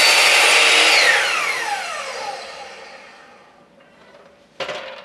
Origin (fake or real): real